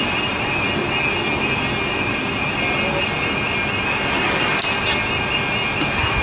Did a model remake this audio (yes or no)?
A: no